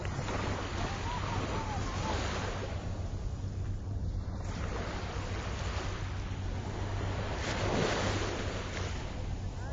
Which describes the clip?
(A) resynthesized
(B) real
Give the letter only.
B